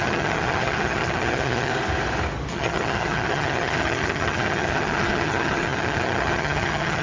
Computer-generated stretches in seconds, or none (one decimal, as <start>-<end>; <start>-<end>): 0.0-1.7; 2.5-7.0